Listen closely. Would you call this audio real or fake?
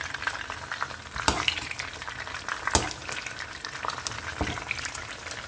real